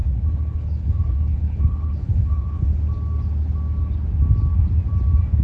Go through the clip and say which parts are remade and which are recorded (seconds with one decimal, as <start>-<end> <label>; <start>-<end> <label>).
0.0-2.6 remade; 2.6-5.4 recorded